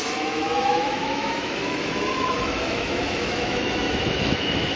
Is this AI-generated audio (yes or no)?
yes